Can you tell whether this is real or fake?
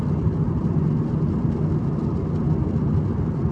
real